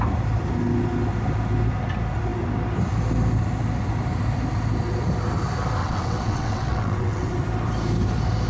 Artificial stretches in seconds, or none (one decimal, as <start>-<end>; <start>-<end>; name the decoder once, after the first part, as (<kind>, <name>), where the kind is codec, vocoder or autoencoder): 5.8-7.3 (vocoder, WaveNeXt)